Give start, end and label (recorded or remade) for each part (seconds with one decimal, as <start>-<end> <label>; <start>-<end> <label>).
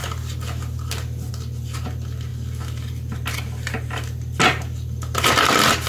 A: 0.0-5.9 recorded